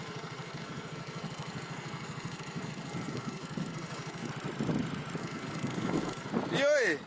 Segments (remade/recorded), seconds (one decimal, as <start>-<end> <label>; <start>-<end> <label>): 0.0-4.3 remade; 4.3-5.2 recorded; 5.2-6.3 remade; 6.3-7.1 recorded